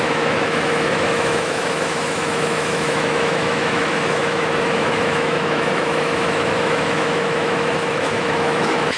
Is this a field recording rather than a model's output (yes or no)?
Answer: no